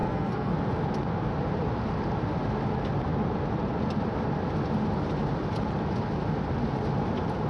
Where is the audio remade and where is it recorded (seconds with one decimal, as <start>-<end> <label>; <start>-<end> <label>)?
0.0-0.5 remade; 0.5-7.5 recorded